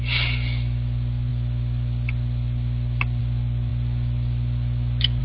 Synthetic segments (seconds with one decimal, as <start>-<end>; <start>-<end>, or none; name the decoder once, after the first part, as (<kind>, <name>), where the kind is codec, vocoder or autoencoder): none